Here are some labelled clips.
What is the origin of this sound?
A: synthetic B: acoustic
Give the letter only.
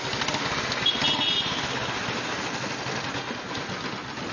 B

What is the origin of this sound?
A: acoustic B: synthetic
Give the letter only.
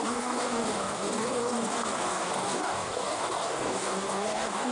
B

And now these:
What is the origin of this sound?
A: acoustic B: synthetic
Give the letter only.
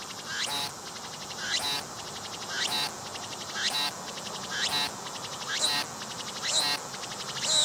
A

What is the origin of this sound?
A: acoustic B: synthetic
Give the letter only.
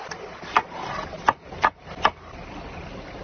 A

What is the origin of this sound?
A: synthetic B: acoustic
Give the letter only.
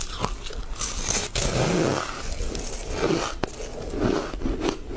B